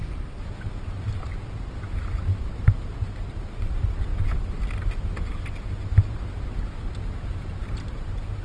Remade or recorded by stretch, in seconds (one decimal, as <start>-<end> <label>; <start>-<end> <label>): 0.0-8.4 recorded